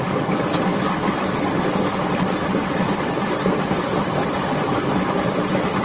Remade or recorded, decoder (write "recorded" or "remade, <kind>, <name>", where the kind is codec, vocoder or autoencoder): recorded